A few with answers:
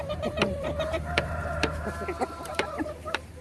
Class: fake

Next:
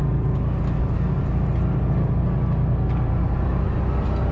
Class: real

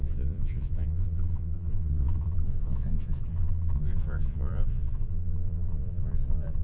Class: fake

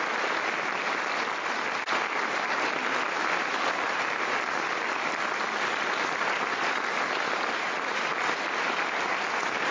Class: real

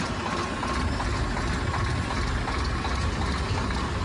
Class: real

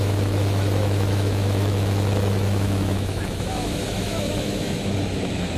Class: fake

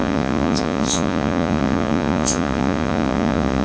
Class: fake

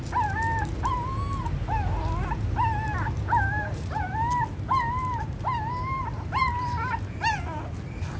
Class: real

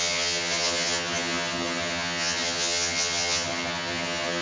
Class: fake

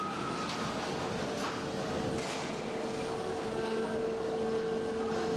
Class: real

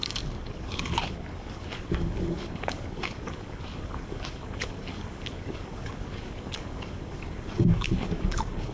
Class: fake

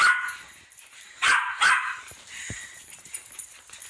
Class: fake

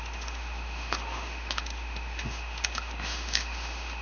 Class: fake